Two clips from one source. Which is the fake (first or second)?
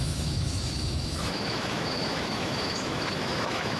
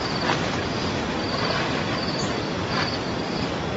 first